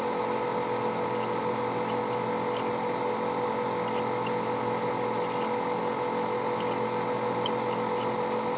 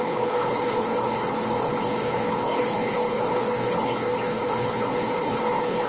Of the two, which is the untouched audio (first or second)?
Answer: first